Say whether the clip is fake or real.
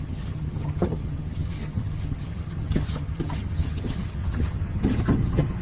fake